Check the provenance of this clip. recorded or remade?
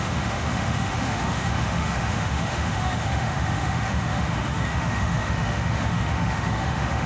remade